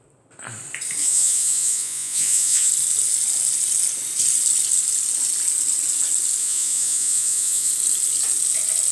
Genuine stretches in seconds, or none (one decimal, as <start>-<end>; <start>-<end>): 0.0-1.0; 2.7-6.4; 7.7-8.9